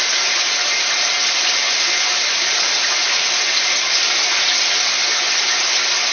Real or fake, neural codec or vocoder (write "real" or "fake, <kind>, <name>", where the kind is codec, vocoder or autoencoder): real